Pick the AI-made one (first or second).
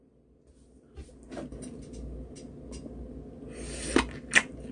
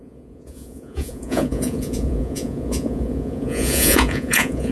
second